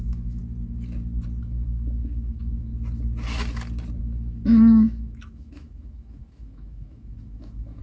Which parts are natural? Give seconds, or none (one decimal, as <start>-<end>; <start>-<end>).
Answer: 0.4-1.4; 2.7-4.0